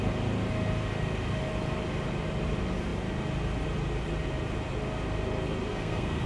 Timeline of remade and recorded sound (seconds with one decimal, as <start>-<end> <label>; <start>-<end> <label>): 0.0-5.7 recorded; 5.7-6.3 remade